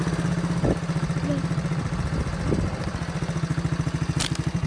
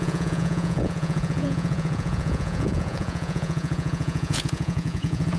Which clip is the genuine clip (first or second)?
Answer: first